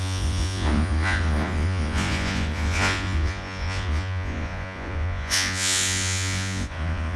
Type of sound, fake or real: fake